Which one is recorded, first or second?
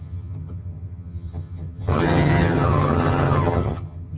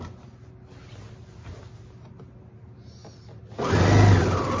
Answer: second